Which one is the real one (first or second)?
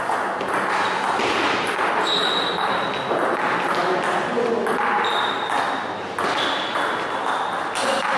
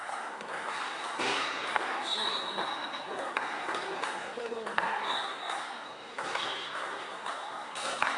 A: first